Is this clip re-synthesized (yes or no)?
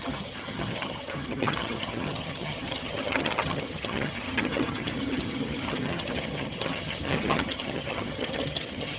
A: yes